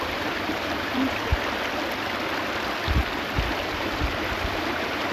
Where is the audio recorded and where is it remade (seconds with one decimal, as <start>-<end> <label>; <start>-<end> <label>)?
0.0-1.3 remade; 1.3-3.6 recorded; 3.6-5.1 remade